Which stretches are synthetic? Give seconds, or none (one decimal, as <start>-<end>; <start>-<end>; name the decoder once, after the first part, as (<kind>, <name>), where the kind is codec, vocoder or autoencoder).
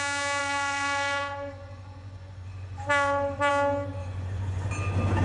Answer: 0.4-3.5 (vocoder, Vocos); 4.0-4.7